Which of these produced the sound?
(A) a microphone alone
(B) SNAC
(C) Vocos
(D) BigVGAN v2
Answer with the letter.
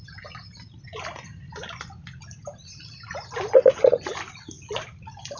A